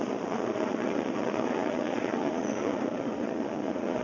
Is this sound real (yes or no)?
no